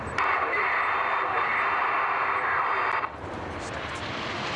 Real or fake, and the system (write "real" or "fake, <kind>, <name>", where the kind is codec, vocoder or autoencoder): real